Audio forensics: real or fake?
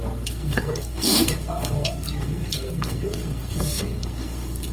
fake